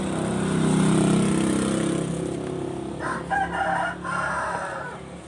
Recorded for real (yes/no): yes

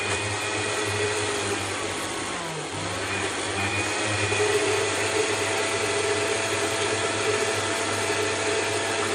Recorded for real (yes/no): yes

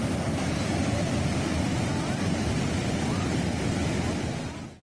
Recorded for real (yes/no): yes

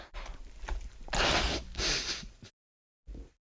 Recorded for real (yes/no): yes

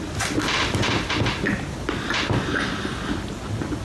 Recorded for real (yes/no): yes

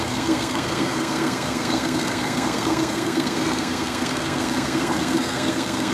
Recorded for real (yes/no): no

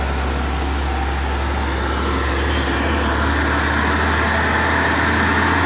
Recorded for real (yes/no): yes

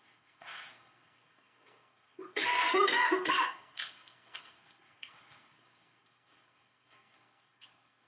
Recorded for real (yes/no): no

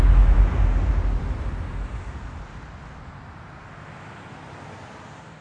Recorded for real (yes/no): yes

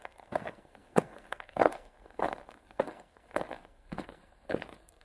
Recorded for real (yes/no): no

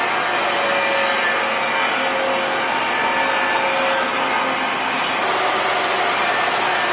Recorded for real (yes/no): yes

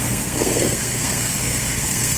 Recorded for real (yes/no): no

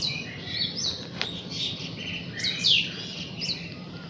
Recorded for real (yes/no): yes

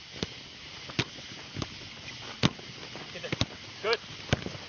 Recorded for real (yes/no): yes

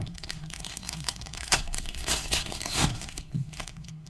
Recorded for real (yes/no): no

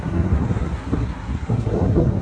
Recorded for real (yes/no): no